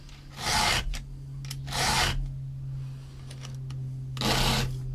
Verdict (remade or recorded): recorded